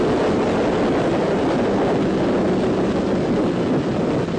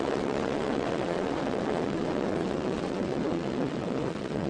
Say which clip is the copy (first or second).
second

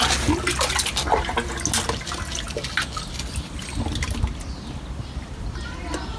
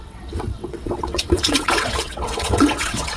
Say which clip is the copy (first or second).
second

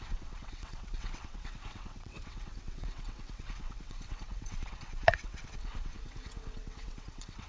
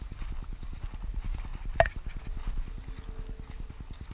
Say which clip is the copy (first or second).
first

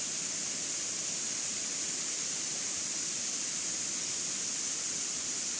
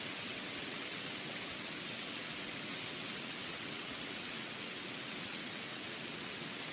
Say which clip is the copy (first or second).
second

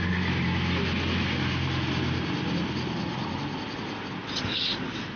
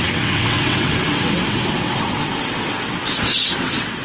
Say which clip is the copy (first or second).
second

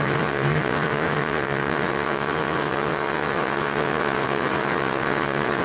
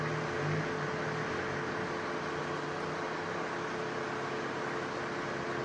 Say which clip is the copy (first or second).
first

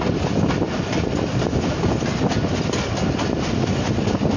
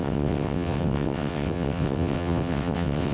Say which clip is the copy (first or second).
second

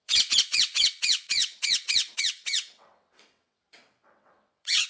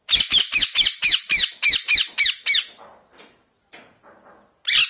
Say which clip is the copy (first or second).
first